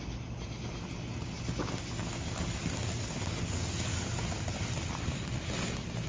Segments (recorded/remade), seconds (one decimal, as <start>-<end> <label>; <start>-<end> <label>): 0.0-6.1 recorded